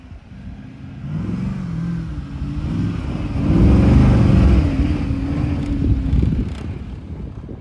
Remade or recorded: recorded